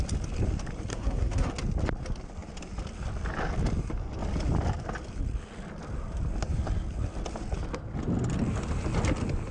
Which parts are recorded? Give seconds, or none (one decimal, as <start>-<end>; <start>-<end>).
0.0-0.9; 1.5-9.5